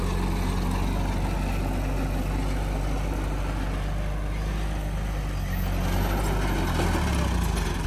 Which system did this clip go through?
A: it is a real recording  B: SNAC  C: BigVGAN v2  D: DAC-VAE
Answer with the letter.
A